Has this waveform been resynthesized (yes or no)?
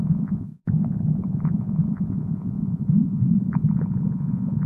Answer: yes